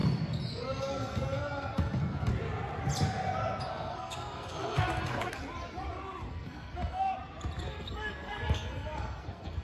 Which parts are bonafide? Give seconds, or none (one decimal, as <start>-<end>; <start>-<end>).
0.0-0.5; 2.3-3.7; 5.4-6.3; 7.1-7.7